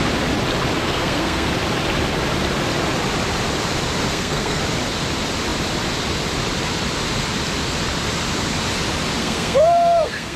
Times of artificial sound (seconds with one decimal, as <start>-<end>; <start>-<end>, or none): 0.8-1.5; 4.1-4.6; 9.2-10.4